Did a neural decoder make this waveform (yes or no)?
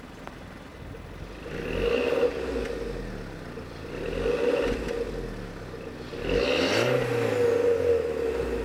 no